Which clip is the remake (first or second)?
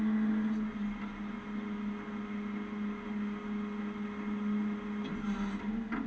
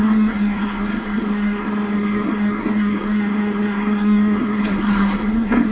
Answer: second